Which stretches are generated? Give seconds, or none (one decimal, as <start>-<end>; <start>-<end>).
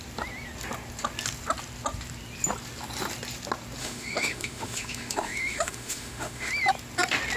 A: 3.8-6.5